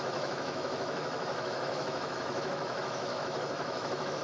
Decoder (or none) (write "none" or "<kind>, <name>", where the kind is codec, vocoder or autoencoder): autoencoder, DAC-VAE